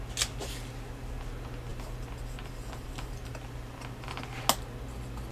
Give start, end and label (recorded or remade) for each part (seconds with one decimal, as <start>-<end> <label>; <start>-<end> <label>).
0.0-5.3 recorded

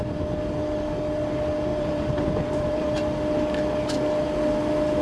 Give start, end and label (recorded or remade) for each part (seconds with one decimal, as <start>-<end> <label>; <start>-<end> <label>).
0.0-1.7 recorded; 1.7-3.0 remade; 3.0-5.0 recorded

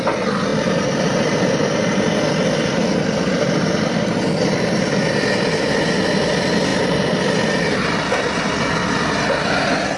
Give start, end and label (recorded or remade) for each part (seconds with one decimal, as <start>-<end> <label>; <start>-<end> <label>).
0.0-0.5 recorded; 0.5-5.0 remade; 5.0-6.7 recorded; 6.7-7.2 remade; 7.2-10.0 recorded

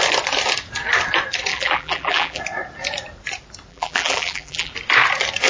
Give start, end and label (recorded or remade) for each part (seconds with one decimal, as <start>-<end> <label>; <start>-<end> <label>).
0.0-1.5 recorded; 1.5-2.4 remade; 2.4-3.7 recorded; 3.7-4.7 remade; 4.7-5.5 recorded

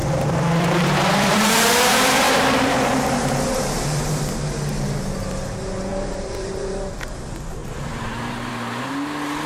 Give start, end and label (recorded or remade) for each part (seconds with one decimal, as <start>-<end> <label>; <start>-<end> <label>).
0.0-4.2 remade; 4.2-5.9 recorded; 5.9-6.9 remade; 6.9-7.6 recorded; 7.6-8.5 remade; 8.5-9.5 recorded

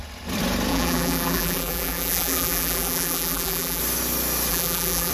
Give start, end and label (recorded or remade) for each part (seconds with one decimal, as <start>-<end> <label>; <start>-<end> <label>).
0.0-0.7 recorded; 0.7-3.8 remade; 3.8-4.5 recorded; 4.5-5.1 remade

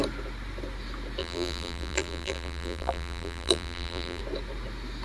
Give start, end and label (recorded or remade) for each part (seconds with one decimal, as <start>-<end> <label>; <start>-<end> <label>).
0.0-1.2 recorded; 1.2-4.2 remade; 4.2-5.0 recorded